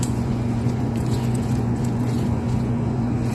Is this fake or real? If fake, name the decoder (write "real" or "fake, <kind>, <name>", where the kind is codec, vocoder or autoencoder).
fake, vocoder, Vocos